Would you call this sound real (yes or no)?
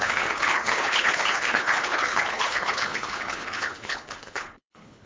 no